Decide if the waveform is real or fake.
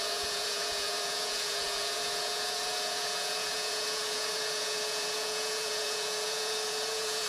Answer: fake